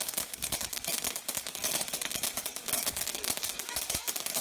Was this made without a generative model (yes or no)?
no